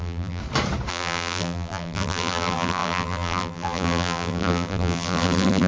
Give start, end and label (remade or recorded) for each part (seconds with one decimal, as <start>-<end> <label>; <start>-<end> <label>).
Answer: 0.0-0.4 remade; 0.4-0.9 recorded; 0.9-5.7 remade